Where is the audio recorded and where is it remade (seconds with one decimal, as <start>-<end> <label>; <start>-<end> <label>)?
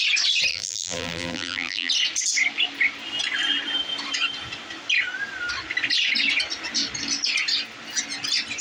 0.0-0.5 recorded; 0.5-1.9 remade; 1.9-8.6 recorded